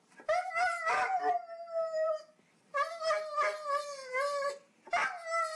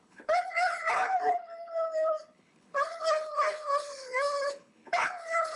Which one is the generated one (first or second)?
second